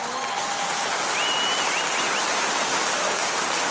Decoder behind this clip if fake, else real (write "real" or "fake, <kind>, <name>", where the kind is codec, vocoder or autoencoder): real